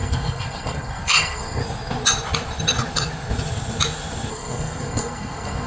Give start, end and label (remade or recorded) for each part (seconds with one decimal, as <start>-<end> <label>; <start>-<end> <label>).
0.0-1.6 remade; 1.6-4.3 recorded; 4.3-5.7 remade